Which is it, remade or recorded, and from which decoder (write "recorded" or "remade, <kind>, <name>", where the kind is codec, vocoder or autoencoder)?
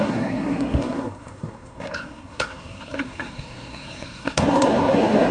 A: remade, codec, SNAC